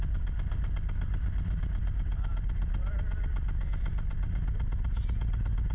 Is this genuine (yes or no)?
yes